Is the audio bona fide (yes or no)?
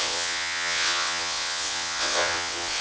no